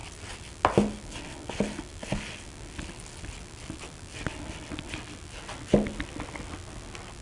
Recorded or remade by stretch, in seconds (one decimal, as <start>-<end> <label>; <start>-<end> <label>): 0.0-7.2 recorded